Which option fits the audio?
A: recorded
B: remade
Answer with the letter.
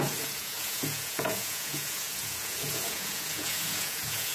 B